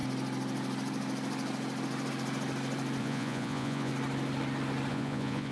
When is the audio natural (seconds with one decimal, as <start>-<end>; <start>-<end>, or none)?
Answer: 0.0-3.0; 3.9-4.9